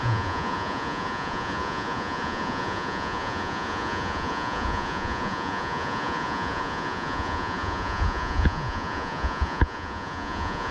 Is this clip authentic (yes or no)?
no